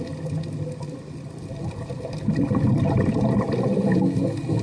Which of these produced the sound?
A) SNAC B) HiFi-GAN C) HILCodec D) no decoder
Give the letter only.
D